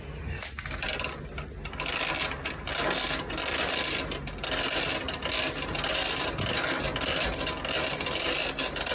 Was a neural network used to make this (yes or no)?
no